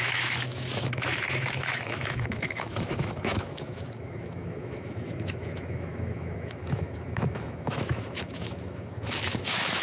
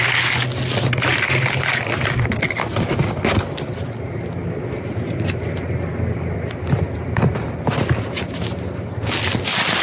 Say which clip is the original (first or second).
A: second